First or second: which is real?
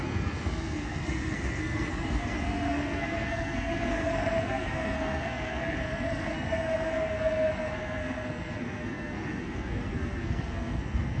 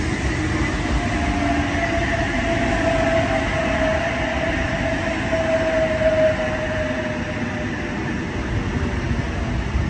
second